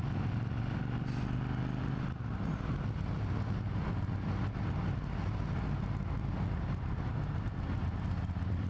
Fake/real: real